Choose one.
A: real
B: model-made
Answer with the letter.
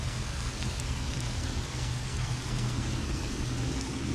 B